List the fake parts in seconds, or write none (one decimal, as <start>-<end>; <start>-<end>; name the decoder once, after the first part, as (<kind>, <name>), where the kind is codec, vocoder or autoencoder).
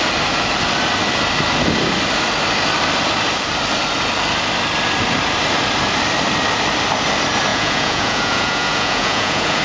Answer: 7.5-9.6 (vocoder, Vocos)